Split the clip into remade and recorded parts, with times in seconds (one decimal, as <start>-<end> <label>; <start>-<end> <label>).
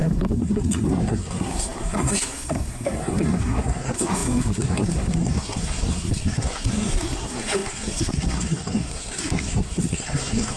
0.0-10.6 remade